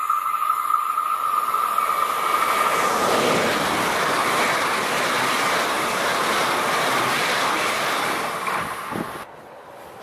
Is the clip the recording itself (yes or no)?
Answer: yes